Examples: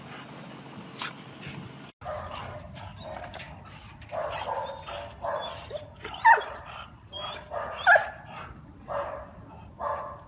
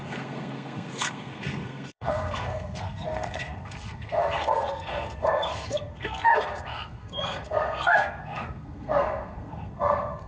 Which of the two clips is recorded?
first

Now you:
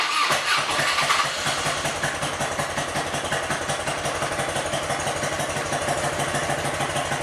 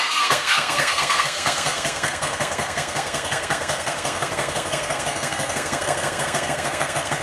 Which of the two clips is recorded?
first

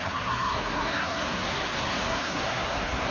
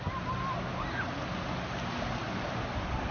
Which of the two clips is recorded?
second